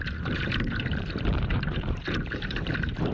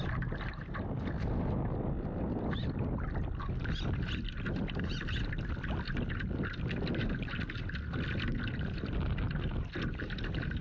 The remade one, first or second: first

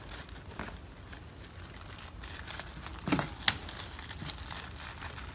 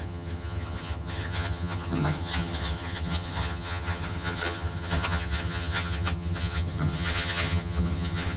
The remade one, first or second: second